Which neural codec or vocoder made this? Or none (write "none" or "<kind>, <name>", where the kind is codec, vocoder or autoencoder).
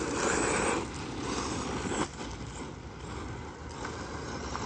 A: none